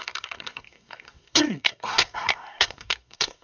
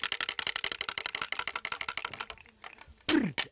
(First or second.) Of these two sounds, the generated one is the first